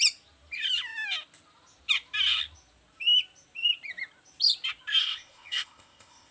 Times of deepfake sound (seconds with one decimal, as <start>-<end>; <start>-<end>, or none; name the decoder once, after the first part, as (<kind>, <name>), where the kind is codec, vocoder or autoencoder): 5.0-6.3 (codec, ZipCodec)